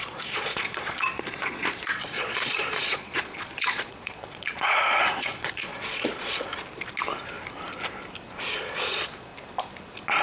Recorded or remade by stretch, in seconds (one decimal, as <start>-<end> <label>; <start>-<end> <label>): 0.0-6.5 remade; 6.5-8.6 recorded; 8.6-9.3 remade; 9.3-10.2 recorded